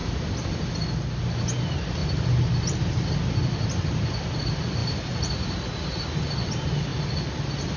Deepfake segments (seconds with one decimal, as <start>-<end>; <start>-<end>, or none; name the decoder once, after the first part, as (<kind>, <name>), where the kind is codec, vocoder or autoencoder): 2.0-3.1 (vocoder, BigVGAN v2); 4.8-6.3